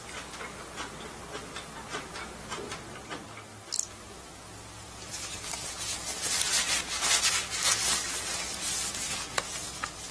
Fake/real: real